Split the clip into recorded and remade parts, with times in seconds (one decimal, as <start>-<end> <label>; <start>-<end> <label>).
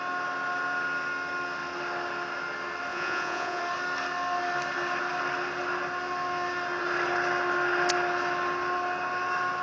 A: 0.0-2.9 recorded; 2.9-3.6 remade; 3.6-9.6 recorded